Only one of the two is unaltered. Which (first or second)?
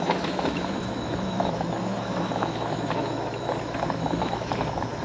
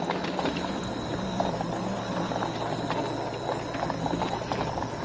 second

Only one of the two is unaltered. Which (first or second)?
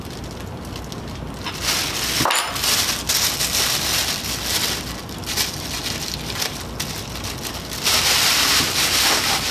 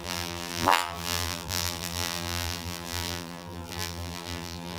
first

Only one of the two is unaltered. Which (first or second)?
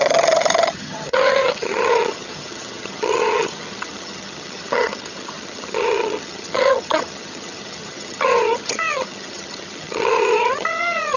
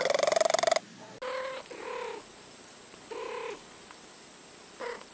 second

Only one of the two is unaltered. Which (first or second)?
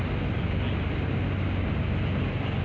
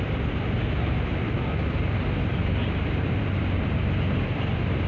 first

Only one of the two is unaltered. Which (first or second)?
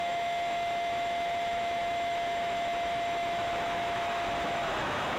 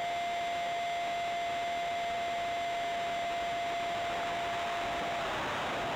second